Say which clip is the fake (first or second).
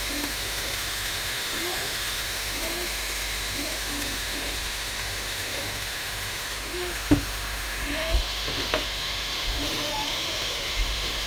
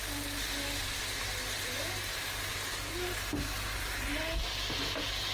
first